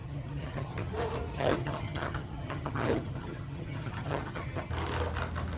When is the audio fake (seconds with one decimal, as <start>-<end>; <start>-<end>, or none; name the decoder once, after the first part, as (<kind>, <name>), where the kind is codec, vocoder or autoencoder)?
0.0-0.9 (vocoder, HiFi-GAN); 1.3-4.7